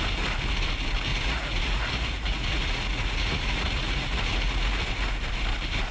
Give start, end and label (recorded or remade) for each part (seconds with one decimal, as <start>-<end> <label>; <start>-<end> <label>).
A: 0.0-1.1 recorded; 1.1-4.6 remade; 4.6-5.9 recorded